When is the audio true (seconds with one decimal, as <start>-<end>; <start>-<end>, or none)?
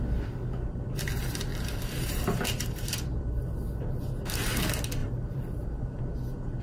0.0-1.5; 3.2-5.0; 6.0-6.6